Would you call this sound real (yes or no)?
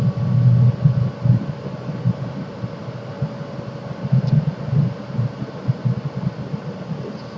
yes